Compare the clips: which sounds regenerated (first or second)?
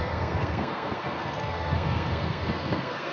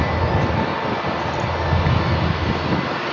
first